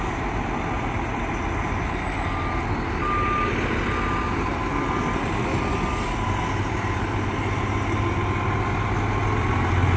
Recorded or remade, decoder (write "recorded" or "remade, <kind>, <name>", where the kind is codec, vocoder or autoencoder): recorded